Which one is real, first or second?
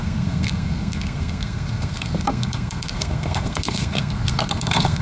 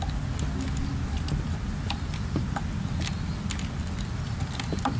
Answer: second